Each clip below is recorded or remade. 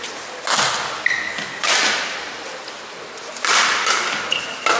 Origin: recorded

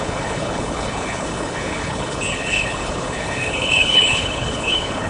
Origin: remade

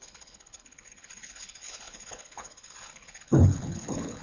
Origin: remade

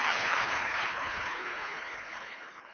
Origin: remade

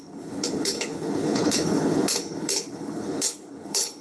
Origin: remade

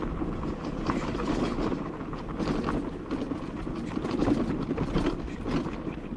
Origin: recorded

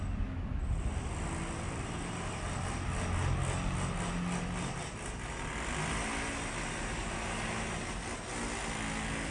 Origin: recorded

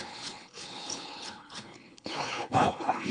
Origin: remade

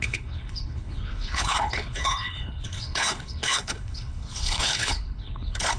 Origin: remade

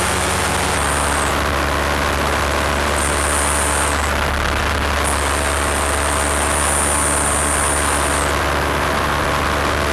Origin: recorded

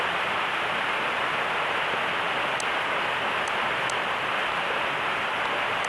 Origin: recorded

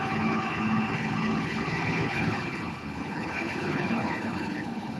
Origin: remade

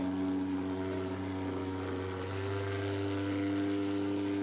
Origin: recorded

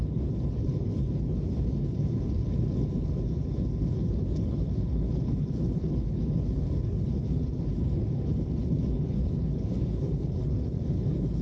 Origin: remade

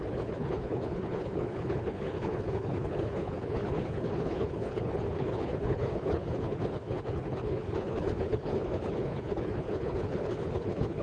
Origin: remade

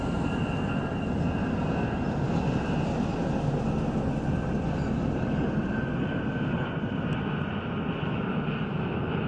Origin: recorded